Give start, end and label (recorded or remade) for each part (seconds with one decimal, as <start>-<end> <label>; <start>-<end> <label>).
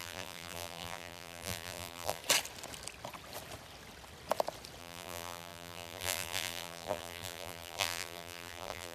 0.0-2.2 remade; 2.2-4.8 recorded; 4.8-8.9 remade